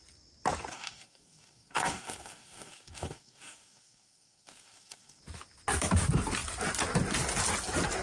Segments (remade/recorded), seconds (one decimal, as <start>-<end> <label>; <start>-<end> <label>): 0.0-0.7 recorded; 0.7-5.2 remade; 5.2-8.0 recorded